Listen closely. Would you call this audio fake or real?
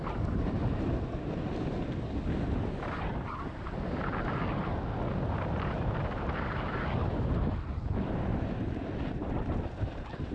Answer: real